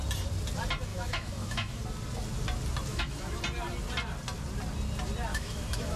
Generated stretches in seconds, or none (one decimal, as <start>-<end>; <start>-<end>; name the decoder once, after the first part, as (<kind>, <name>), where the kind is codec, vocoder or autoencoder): 0.9-1.8 (autoencoder, DAC-VAE); 2.9-3.4; 5.3-6.0